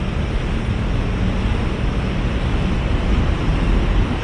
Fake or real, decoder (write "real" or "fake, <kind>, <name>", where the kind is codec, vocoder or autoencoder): real